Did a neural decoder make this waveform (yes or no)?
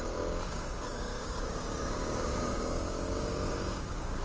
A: yes